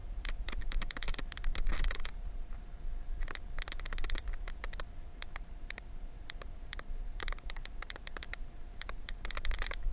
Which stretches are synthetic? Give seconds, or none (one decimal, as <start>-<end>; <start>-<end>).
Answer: 0.0-1.2; 1.7-2.7; 5.1-9.9